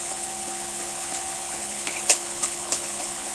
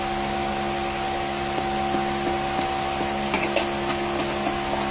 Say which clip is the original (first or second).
second